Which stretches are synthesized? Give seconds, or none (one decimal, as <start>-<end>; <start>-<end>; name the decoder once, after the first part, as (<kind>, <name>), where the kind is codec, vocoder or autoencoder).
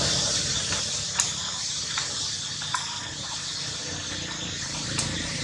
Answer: 0.0-1.8 (vocoder, BigVGAN v2); 3.0-3.5; 4.6-5.4